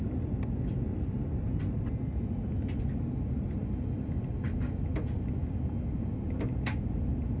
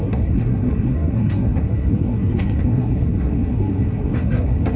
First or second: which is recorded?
first